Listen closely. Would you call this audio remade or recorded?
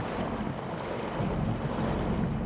recorded